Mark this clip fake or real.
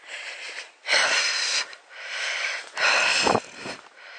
real